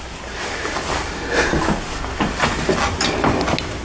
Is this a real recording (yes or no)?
yes